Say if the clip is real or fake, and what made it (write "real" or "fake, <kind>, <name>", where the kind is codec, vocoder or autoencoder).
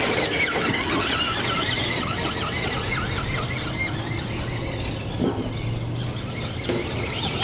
real